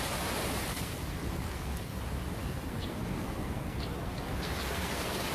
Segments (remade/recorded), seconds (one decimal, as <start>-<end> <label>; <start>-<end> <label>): 0.0-0.7 recorded; 0.7-2.0 remade; 2.0-2.4 recorded; 2.4-5.3 remade